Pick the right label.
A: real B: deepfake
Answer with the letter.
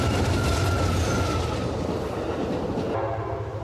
A